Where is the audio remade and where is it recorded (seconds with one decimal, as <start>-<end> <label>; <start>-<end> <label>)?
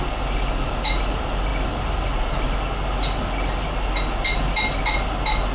0.0-5.5 recorded